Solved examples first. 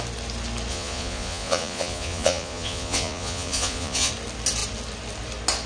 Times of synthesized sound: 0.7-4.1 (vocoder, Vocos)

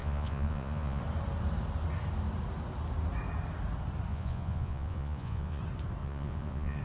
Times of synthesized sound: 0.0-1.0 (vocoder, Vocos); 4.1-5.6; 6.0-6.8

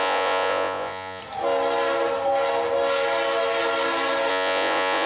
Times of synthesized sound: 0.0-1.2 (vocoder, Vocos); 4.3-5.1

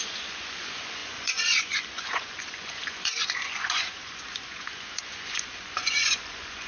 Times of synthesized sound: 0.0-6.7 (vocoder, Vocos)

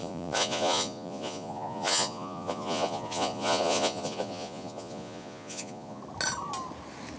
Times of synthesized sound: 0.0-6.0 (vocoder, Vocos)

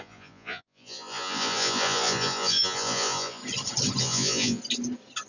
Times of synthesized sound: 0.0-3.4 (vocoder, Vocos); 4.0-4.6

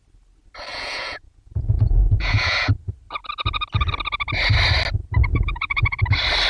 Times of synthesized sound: 0.7-2.8 (vocoder, Vocos); 5.3-6.0